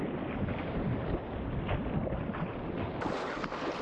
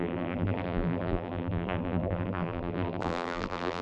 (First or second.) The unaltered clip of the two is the first